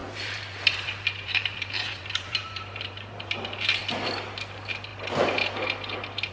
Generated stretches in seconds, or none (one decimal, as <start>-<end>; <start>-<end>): 0.0-3.8